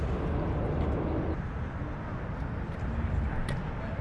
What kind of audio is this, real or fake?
real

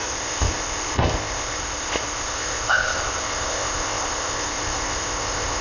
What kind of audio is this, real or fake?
fake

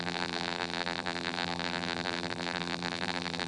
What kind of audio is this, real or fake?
fake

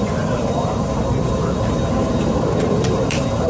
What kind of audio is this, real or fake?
fake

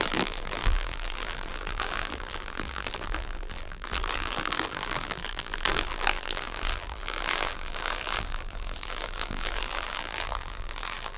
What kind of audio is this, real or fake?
fake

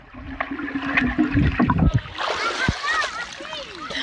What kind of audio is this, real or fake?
real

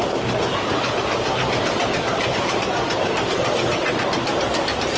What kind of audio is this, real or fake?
fake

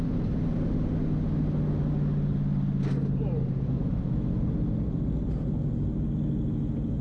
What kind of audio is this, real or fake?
real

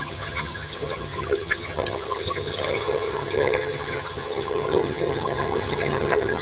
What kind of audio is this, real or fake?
fake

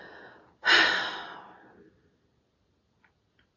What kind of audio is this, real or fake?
real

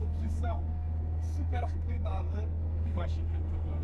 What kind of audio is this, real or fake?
fake